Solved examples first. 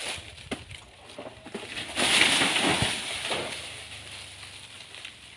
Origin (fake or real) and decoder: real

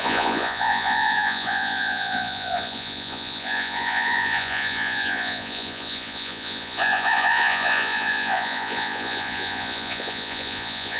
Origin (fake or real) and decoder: fake, vocoder, Vocos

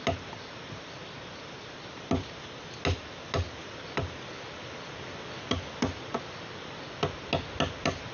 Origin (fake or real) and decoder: real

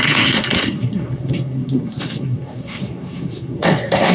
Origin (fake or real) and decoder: fake, codec, SNAC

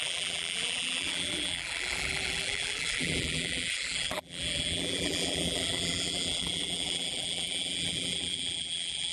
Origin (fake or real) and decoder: fake, vocoder, BigVGAN v2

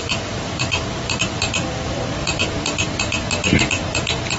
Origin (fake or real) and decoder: fake, vocoder, BigVGAN v2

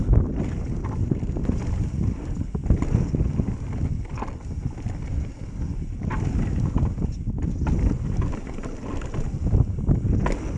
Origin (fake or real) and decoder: real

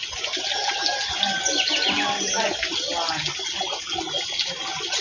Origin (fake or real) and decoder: real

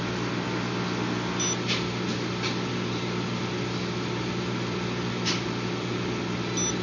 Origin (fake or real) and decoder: real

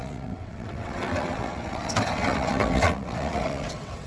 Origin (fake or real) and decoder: fake, vocoder, WaveNeXt